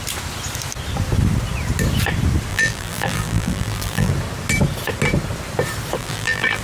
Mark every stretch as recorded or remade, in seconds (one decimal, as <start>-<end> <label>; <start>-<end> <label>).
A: 0.0-2.5 recorded; 2.5-4.1 remade; 4.1-6.0 recorded; 6.0-6.6 remade